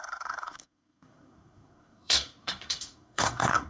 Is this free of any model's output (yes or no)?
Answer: no